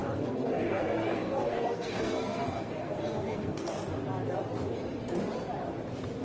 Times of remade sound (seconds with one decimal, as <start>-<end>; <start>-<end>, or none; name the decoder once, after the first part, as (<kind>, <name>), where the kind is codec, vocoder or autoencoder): 0.0-3.7 (codec, SNAC)